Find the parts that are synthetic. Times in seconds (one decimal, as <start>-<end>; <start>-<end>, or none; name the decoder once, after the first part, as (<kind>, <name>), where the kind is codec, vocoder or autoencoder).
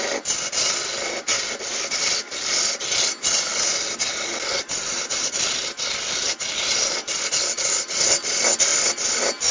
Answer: 1.7-2.8 (vocoder, BigVGAN v2); 3.5-6.5